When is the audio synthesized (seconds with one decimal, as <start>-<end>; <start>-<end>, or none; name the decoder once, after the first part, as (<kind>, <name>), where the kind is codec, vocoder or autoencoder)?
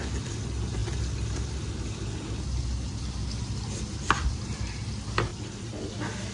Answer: none